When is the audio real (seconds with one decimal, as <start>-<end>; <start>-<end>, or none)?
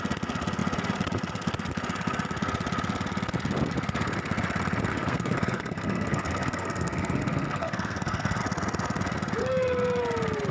0.0-4.9; 8.4-9.4; 10.0-10.5